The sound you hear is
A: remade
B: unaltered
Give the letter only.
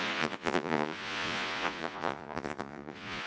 A